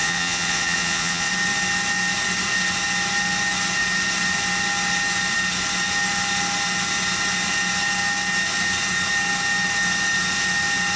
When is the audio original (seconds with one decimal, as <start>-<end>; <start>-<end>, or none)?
1.3-11.0